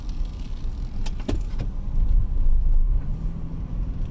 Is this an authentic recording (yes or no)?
yes